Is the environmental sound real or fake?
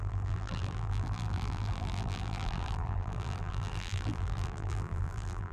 fake